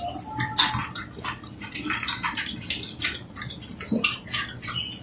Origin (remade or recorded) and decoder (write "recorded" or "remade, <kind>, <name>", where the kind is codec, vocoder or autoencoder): recorded